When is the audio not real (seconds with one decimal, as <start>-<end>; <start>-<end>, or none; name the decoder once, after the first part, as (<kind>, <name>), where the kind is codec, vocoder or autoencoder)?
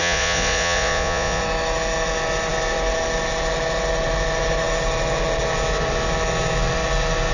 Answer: 0.0-1.4 (vocoder, Vocos)